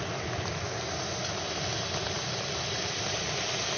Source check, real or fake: real